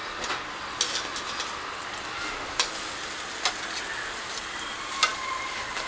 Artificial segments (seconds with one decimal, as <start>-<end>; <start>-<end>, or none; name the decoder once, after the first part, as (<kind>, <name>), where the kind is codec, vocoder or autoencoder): none